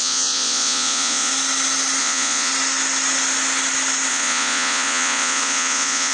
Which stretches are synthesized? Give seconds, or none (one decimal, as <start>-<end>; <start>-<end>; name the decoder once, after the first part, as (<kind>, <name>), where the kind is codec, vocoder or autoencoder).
0.0-1.3 (vocoder, Vocos); 2.0-2.5; 4.1-6.1